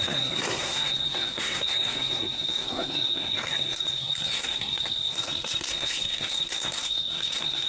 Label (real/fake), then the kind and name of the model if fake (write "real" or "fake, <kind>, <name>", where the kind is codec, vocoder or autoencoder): fake, codec, SNAC